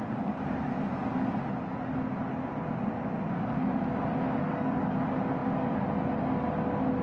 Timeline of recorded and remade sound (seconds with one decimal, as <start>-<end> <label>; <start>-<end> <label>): 0.0-4.4 recorded; 4.4-4.9 remade; 4.9-7.0 recorded